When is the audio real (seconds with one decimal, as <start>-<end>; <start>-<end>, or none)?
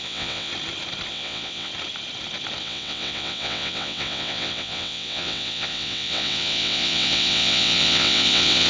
0.5-1.1; 1.7-2.6